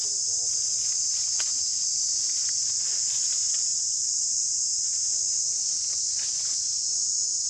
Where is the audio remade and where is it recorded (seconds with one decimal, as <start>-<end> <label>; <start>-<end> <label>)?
0.0-7.5 recorded